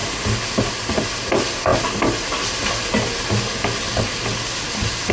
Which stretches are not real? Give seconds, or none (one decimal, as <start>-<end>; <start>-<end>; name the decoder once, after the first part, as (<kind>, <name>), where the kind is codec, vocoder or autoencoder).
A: none